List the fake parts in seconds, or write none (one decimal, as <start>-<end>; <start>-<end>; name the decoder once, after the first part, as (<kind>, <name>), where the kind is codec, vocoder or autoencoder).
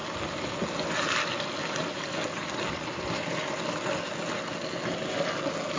none